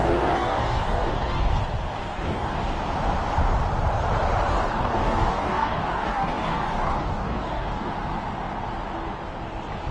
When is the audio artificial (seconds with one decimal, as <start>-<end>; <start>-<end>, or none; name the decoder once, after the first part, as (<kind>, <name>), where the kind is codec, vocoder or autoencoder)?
0.0-1.5 (codec, DAC); 2.0-2.6; 4.5-7.9